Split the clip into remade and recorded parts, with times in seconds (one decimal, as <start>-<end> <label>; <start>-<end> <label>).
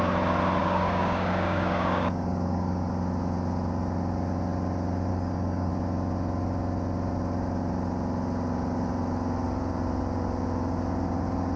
0.0-0.6 recorded; 0.6-2.9 remade; 2.9-5.1 recorded; 5.1-5.7 remade; 5.7-11.6 recorded